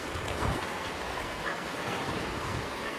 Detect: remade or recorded remade